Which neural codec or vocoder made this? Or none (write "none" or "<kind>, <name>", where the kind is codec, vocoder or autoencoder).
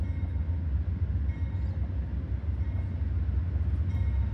none